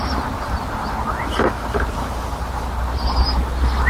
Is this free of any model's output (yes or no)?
yes